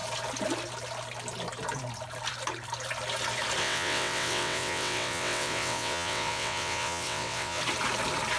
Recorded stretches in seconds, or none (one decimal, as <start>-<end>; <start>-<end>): 0.0-3.6; 7.6-8.4